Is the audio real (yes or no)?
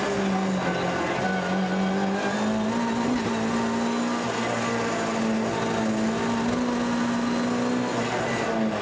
yes